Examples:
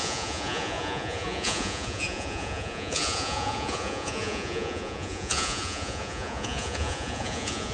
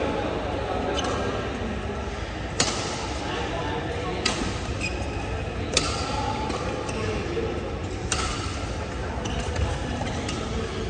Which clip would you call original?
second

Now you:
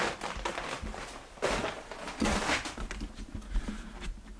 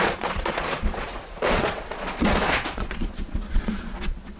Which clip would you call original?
first